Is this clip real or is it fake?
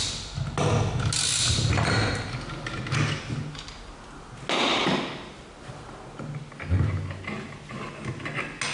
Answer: real